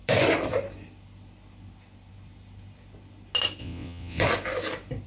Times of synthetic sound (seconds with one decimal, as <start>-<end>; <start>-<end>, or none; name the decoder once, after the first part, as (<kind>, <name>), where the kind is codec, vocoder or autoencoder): 3.6-4.2 (vocoder, WaveNeXt)